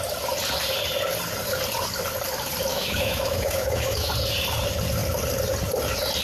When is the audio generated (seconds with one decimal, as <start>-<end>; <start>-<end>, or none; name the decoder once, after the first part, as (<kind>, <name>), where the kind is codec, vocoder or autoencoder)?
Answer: 2.7-4.1 (autoencoder, DAC-VAE)